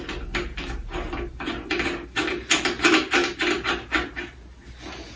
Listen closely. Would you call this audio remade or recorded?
recorded